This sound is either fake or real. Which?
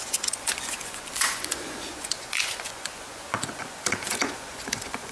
fake